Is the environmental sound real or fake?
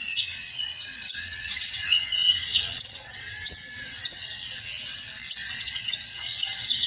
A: fake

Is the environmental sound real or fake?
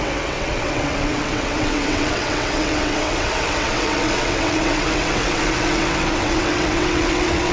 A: fake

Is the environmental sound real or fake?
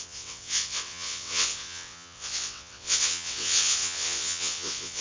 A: fake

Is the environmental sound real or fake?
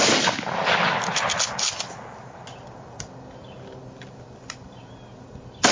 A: real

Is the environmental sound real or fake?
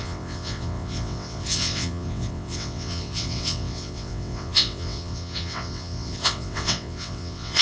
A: fake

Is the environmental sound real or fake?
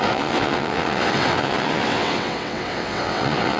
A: fake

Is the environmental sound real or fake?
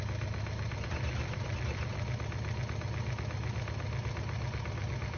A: real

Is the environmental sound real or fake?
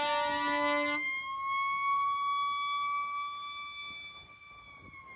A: real